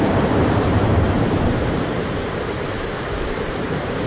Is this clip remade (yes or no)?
yes